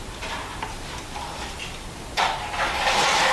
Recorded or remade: recorded